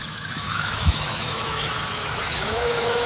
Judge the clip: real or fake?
fake